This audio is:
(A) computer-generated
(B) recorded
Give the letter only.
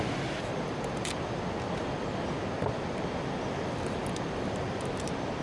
B